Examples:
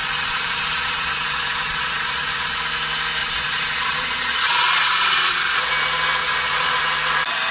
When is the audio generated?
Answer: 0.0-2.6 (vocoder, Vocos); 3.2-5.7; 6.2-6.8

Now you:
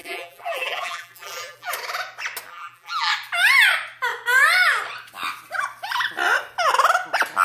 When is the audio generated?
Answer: 0.0-1.7 (vocoder, BigVGAN v2); 2.5-3.1